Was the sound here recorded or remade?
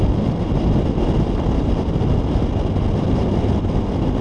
recorded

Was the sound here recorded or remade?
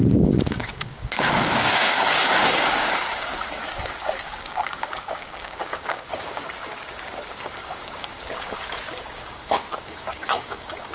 remade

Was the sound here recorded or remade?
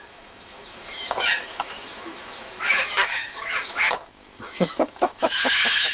remade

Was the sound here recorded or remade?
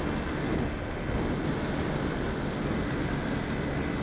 recorded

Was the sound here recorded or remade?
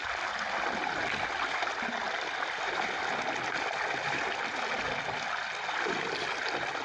recorded